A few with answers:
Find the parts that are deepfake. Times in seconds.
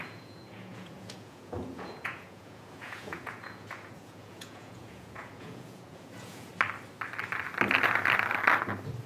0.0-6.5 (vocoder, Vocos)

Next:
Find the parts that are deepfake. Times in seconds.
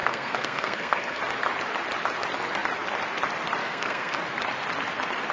0.0-1.2 (codec, SNAC); 3.6-4.2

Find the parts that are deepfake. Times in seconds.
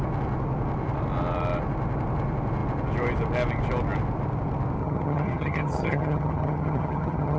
4.8-7.4 (vocoder, HiFi-GAN)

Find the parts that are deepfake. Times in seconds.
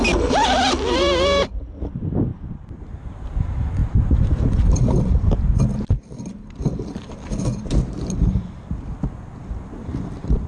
2.3-2.8 (vocoder, BigVGAN v2); 3.8-4.7; 7.4-8.6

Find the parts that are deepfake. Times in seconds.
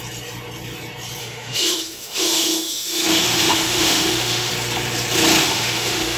1.2-4.5 (autoencoder, DAC-VAE); 5.4-6.2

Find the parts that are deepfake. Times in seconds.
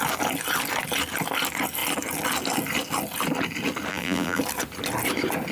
3.9-4.4 (vocoder, BigVGAN v2)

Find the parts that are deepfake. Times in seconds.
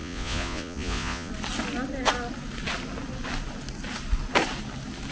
0.0-1.3 (vocoder, Vocos)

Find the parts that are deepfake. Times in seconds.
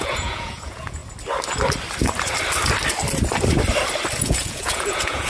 0.0-1.0 (vocoder, Vocos); 4.2-5.3